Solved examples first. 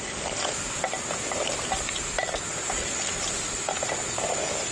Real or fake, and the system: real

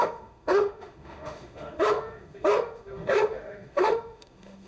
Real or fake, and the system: fake, autoencoder, DAC-VAE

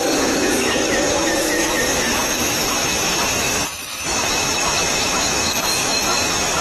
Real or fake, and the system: fake, autoencoder, DAC-VAE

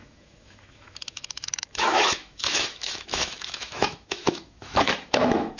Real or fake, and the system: fake, autoencoder, DAC-VAE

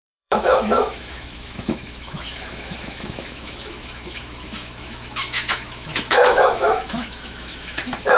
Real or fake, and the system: fake, autoencoder, DAC-VAE